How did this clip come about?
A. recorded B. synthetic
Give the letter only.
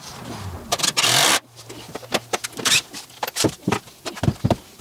A